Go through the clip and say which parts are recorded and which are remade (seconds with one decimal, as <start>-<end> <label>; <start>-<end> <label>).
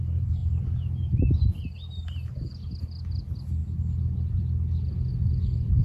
0.0-5.8 remade